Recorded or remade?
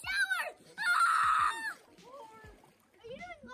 recorded